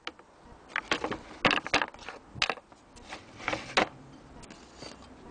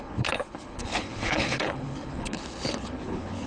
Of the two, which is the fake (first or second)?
second